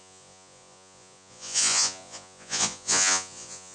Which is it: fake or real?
fake